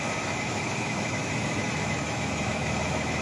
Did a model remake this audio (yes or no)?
yes